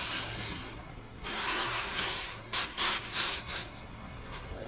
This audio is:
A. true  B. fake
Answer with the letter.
B